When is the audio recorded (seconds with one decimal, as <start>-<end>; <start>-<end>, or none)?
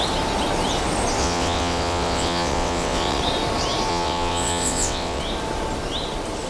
0.0-1.2; 3.2-3.9; 5.2-6.5